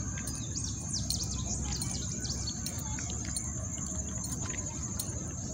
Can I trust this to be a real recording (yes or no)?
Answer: no